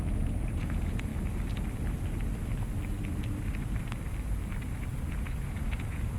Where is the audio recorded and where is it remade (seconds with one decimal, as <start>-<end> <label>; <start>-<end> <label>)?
0.0-1.1 remade; 1.1-4.8 recorded; 4.8-6.2 remade